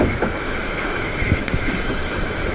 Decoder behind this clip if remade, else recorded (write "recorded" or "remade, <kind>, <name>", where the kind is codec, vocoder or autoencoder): remade, autoencoder, DAC-VAE